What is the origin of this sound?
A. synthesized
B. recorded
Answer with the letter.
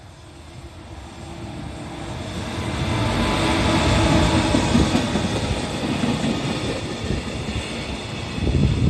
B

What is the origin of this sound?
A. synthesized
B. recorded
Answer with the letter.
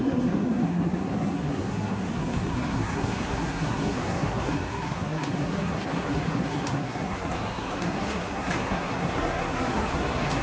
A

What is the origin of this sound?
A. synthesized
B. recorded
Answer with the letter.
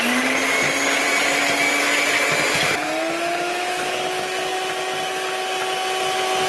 B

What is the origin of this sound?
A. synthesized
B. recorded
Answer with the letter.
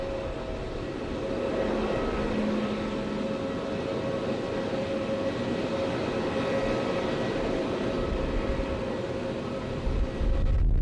B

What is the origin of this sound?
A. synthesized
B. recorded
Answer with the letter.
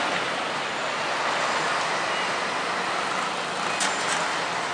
B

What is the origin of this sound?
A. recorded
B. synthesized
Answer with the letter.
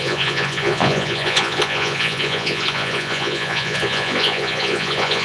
B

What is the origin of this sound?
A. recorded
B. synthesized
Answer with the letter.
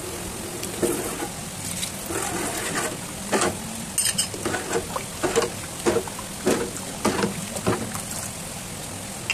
A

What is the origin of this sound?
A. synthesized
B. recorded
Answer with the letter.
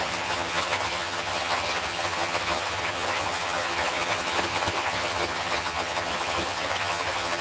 A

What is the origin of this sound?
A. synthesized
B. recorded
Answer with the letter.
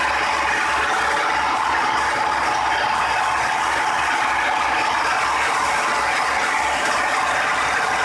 B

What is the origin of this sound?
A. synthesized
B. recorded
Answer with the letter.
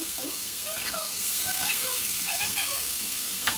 A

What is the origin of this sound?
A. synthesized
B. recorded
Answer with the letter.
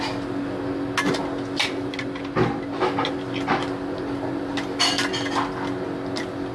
B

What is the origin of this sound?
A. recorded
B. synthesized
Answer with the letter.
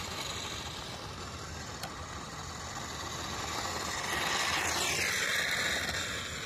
A